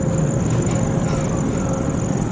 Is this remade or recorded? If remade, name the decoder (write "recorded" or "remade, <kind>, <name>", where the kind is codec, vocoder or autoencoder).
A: recorded